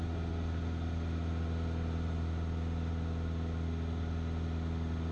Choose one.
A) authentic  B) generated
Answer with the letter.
A